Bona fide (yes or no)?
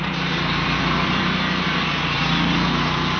no